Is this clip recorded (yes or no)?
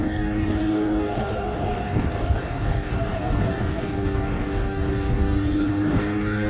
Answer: no